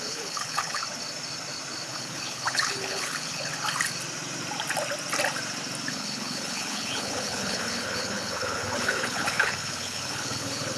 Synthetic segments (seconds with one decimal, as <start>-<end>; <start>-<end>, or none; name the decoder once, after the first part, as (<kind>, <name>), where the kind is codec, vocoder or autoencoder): 0.0-0.8 (codec, HILCodec); 1.9-3.5; 5.9-10.8